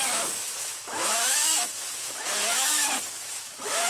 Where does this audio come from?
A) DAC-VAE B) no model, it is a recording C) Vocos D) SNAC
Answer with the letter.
A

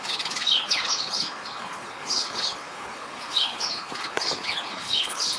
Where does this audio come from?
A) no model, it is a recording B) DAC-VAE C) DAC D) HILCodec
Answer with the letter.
D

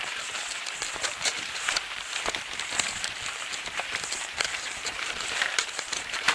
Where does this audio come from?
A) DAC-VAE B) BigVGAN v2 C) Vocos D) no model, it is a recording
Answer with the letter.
B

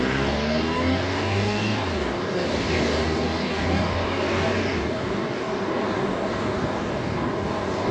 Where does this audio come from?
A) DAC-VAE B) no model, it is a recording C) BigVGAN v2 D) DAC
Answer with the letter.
D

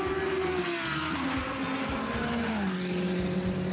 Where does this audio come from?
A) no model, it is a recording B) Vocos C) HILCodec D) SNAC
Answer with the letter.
A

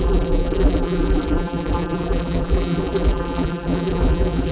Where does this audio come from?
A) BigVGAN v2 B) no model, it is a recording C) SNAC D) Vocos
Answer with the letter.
A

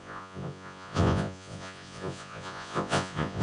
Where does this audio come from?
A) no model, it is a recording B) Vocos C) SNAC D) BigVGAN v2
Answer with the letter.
B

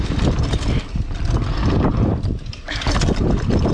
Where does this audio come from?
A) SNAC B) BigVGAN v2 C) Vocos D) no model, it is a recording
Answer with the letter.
B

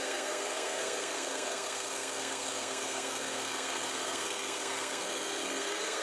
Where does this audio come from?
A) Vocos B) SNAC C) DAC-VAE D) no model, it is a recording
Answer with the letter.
B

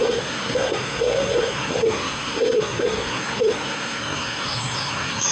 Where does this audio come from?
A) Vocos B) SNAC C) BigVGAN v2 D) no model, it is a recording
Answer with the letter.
B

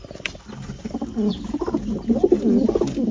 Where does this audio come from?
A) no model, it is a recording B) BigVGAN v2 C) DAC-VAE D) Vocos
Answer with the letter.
A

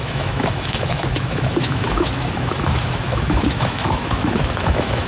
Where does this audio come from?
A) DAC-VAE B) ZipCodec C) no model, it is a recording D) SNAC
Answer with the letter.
A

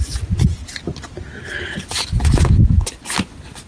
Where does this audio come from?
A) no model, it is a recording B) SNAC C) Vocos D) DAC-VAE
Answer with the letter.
A